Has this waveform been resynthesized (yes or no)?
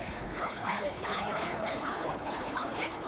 yes